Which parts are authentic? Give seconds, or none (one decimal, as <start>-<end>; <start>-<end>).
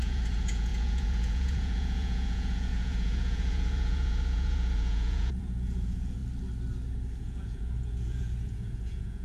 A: 6.2-7.2